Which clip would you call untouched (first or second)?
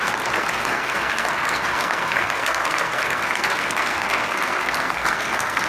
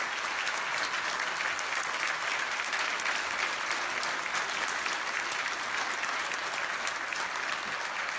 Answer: second